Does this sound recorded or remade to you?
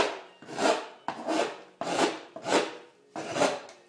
recorded